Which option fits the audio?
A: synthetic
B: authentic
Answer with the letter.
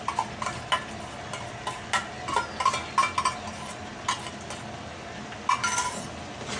B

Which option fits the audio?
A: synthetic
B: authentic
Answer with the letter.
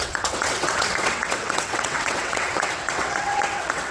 A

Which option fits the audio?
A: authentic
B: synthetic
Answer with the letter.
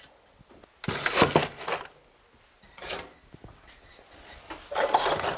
A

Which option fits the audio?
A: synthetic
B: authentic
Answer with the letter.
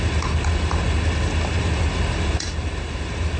B